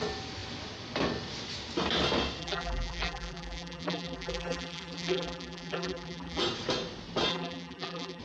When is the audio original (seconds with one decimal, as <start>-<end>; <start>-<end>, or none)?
0.0-2.4; 6.4-7.3